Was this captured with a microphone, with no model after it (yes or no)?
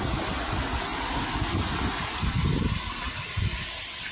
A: yes